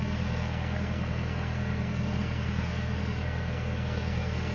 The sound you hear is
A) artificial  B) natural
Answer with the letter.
A